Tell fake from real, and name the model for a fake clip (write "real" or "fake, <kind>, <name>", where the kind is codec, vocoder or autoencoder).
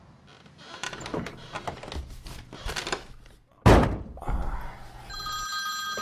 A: real